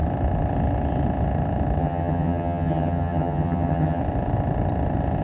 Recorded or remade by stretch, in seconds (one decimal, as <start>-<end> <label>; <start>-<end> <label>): 0.0-1.8 recorded; 1.8-4.0 remade; 4.0-5.2 recorded